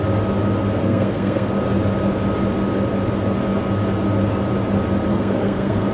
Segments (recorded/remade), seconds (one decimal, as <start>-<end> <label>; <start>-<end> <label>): 0.0-0.8 recorded; 0.8-1.5 remade; 1.5-5.1 recorded; 5.1-5.9 remade